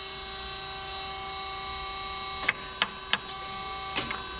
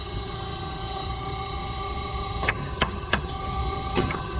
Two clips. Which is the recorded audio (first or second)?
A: first